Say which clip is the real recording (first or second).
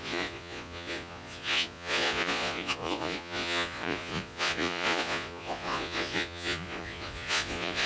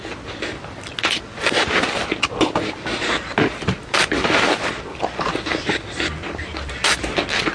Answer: second